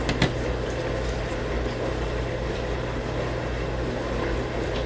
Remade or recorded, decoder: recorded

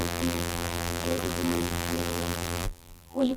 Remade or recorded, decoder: remade, vocoder, BigVGAN v2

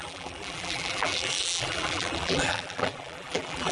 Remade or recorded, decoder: remade, vocoder, BigVGAN v2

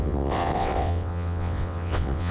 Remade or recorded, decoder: remade, vocoder, WaveNeXt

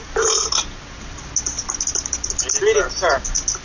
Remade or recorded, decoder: recorded